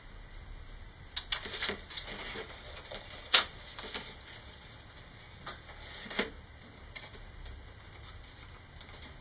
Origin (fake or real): real